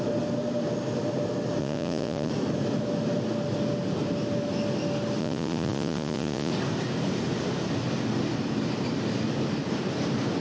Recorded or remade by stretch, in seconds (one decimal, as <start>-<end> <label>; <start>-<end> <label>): 0.0-1.6 recorded; 1.6-2.3 remade; 2.3-5.2 recorded; 5.2-6.5 remade; 6.5-10.4 recorded